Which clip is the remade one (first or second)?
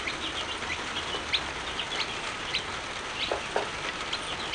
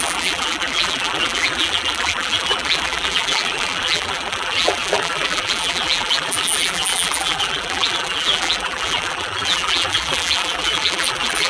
second